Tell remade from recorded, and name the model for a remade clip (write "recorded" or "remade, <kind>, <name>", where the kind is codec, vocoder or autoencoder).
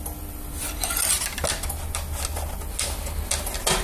recorded